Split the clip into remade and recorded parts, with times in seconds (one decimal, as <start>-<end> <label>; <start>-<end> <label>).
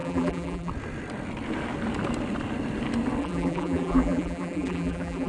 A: 0.0-0.7 remade; 0.7-3.2 recorded; 3.2-5.3 remade